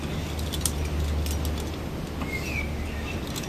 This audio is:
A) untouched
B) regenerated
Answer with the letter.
A